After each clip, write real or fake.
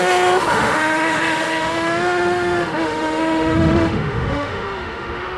fake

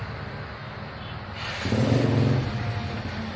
real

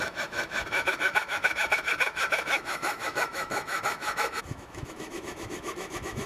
fake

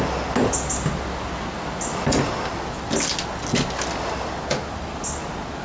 real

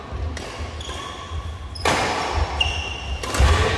real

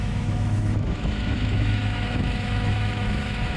fake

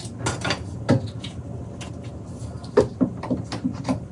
real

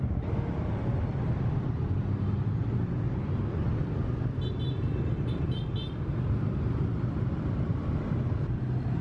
real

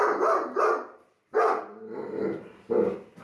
real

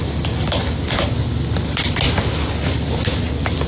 real